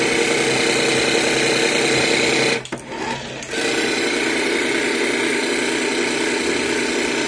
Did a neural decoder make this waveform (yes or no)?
no